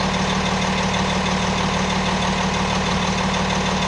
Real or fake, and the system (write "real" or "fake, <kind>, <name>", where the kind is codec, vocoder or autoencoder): real